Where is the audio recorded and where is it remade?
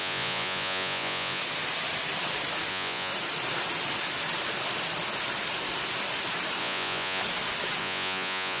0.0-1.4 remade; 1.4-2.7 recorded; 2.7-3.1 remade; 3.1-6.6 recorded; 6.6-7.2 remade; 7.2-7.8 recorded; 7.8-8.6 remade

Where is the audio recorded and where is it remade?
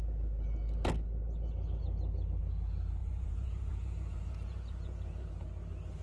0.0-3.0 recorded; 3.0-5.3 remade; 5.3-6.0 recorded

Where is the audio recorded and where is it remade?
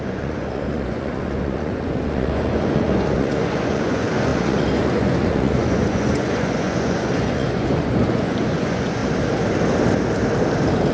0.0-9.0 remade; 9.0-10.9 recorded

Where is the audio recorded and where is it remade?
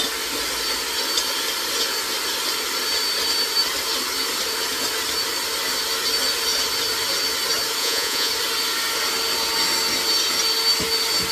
0.0-7.8 recorded; 7.8-8.3 remade; 8.3-11.3 recorded